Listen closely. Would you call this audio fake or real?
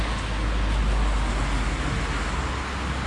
real